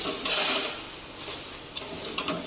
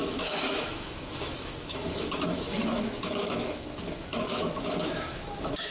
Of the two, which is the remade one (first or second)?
second